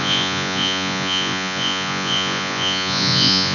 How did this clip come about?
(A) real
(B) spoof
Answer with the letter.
B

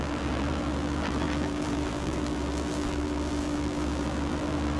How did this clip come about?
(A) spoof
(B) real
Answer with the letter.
A